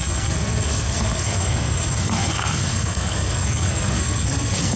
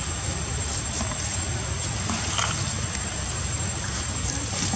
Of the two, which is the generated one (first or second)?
first